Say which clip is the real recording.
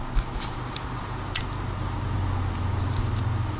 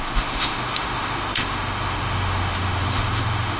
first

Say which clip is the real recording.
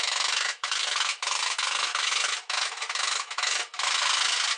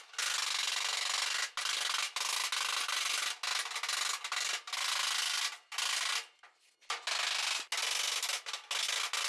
second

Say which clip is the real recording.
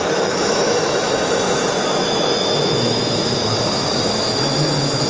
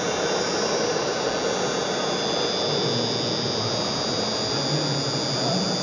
second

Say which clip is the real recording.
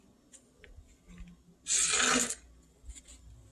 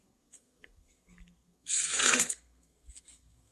first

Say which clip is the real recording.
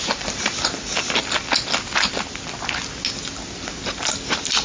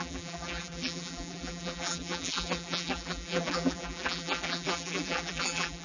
first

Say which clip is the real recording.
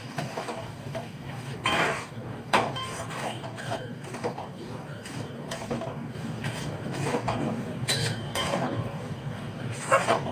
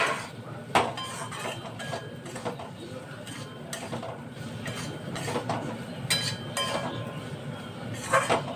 second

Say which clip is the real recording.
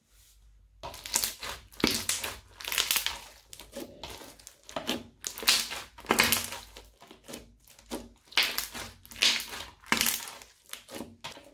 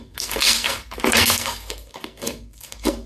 first